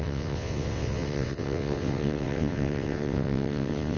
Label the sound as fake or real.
fake